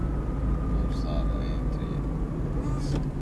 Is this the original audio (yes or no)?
yes